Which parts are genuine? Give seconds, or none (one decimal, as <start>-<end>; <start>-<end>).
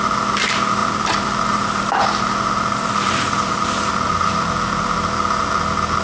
0.0-0.8; 4.4-6.0